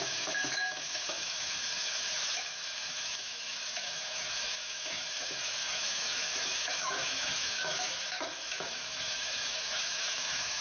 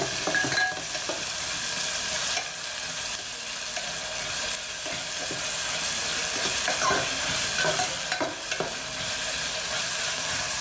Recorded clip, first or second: second